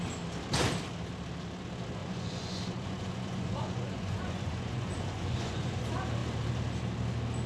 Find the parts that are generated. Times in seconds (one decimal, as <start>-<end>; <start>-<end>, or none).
2.0-5.8